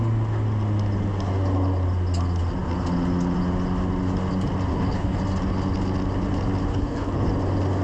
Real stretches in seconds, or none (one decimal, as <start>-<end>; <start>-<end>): 0.0-4.7; 5.2-6.7; 7.3-7.8